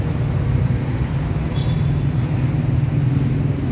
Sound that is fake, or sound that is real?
real